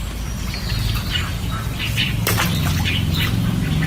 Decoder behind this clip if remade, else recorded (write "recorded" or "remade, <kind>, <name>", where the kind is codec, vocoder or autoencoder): recorded